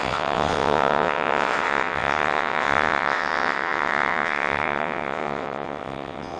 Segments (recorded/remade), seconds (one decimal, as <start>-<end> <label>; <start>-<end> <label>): 0.0-6.4 remade